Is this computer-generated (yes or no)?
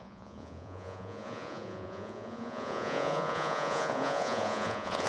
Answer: yes